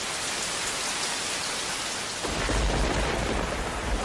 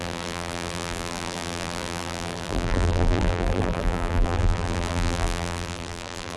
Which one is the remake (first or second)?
second